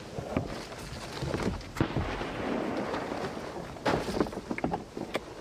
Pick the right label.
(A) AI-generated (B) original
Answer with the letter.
B